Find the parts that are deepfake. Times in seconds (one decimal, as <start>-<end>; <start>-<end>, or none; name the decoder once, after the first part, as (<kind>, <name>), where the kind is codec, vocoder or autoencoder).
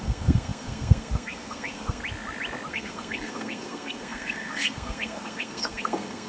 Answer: 0.0-2.0 (codec, SNAC); 2.7-6.3